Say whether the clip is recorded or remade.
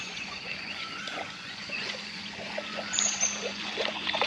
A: remade